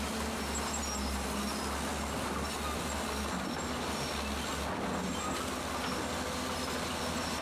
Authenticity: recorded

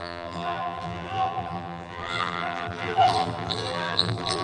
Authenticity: remade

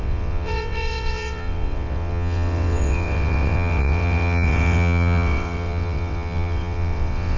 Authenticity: remade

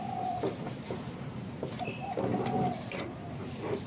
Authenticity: remade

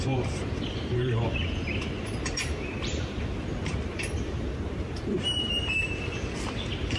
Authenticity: remade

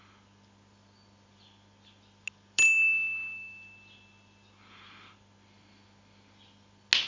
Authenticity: recorded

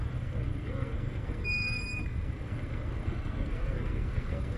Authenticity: remade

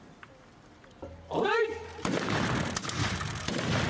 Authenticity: recorded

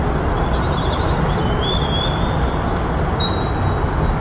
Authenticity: recorded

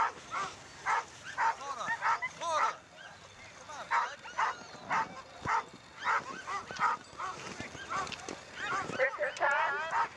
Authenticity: recorded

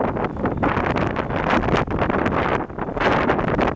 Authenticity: recorded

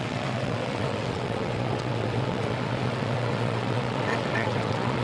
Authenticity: remade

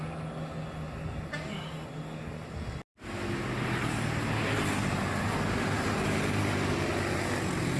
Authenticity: recorded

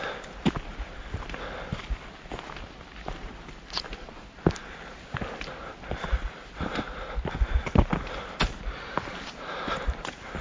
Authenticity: recorded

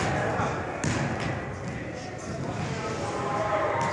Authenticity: recorded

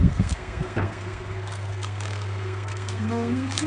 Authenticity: remade